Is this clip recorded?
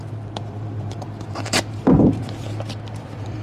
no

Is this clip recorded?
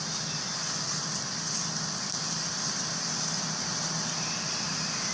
no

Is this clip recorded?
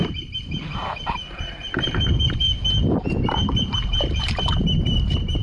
no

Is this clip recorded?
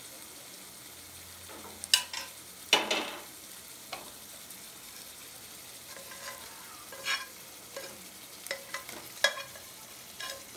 yes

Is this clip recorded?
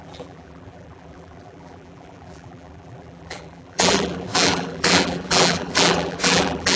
no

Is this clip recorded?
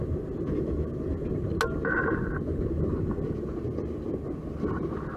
yes